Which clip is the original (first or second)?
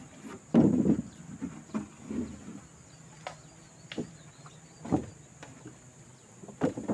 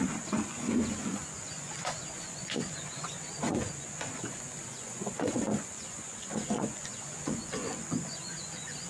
first